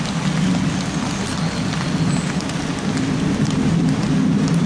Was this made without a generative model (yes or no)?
yes